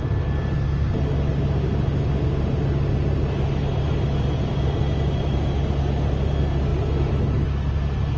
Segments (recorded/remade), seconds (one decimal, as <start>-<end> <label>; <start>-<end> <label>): 0.0-8.2 recorded